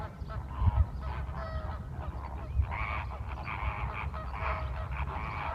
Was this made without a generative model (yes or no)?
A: yes